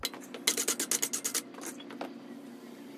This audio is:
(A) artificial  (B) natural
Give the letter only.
B